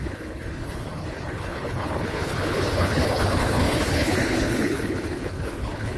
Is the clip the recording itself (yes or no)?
no